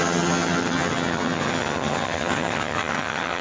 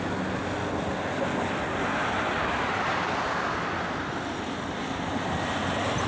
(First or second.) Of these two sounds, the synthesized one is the first